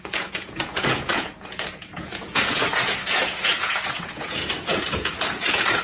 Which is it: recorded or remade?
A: remade